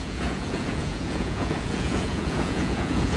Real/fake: fake